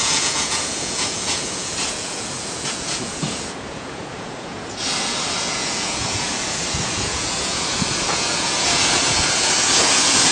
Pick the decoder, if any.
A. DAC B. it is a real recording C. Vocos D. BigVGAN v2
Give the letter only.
C